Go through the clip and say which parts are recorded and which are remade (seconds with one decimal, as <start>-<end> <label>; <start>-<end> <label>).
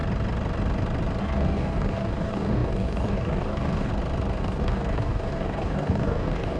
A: 0.0-1.2 recorded; 1.2-3.9 remade; 3.9-4.4 recorded; 4.4-6.6 remade